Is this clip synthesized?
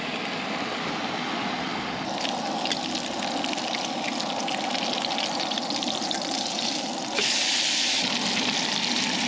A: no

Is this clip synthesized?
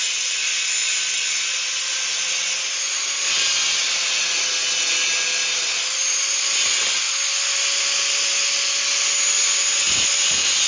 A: no